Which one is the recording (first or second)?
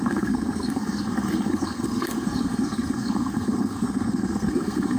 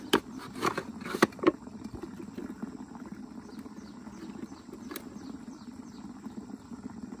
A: second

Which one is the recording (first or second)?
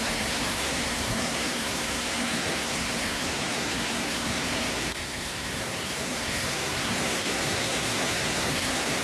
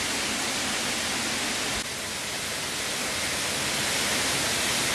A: second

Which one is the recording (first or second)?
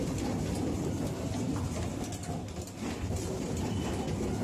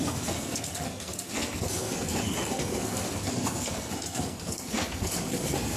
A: first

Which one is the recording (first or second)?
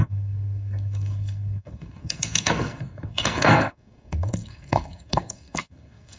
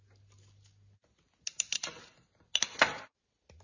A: second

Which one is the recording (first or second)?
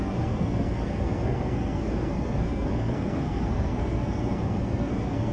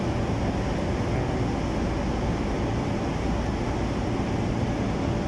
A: second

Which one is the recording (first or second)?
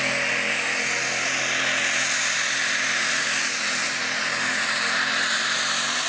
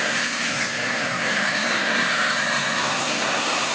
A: first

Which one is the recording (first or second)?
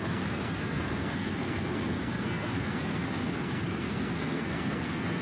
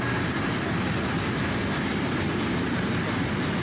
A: second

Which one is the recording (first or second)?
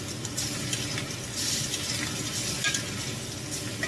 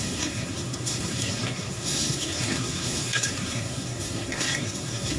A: first